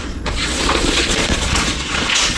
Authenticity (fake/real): fake